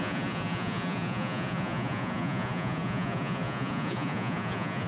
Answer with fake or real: fake